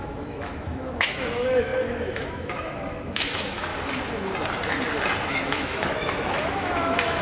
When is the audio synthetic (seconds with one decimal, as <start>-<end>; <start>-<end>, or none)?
0.0-3.7; 5.3-7.2

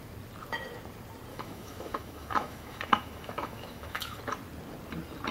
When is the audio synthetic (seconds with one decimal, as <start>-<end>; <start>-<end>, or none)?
1.3-4.2

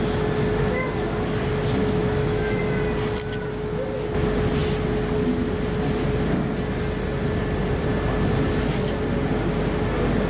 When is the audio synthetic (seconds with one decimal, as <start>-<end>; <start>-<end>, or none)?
1.8-2.6

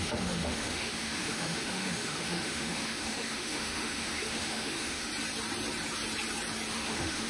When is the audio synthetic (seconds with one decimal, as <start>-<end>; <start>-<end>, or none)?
0.0-5.1; 6.7-7.3

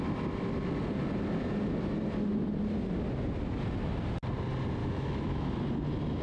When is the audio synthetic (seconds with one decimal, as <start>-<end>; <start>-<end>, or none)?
4.8-5.5

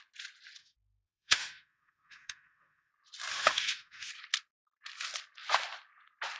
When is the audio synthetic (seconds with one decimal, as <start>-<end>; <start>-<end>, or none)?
0.6-2.9; 3.3-4.1

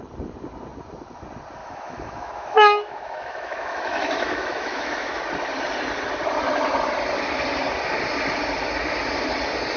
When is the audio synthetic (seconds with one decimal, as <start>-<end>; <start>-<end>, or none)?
1.6-5.2